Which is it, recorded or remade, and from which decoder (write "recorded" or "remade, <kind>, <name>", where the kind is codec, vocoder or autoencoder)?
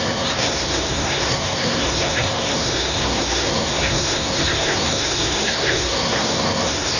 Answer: remade, codec, SNAC